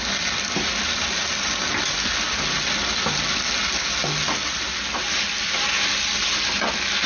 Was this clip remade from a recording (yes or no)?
no